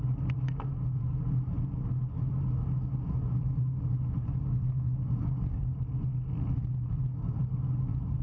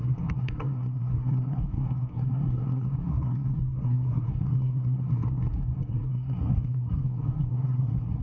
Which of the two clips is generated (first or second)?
second